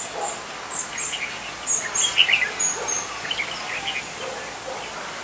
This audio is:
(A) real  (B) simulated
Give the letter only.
A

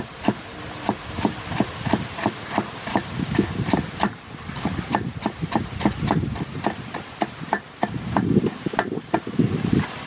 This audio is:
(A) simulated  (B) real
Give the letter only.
A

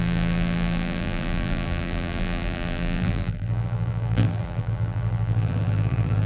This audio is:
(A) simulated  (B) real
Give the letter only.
A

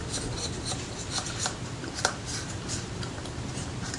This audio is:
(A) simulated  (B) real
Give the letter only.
A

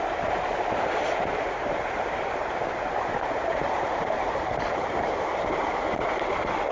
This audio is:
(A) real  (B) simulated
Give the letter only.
B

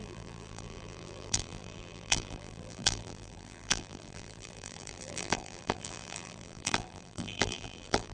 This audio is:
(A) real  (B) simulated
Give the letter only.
B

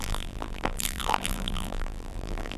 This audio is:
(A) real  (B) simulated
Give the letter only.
B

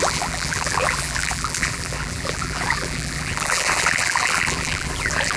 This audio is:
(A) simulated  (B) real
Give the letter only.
A